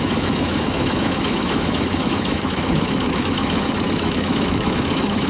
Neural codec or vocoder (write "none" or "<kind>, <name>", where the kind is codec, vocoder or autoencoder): autoencoder, DAC-VAE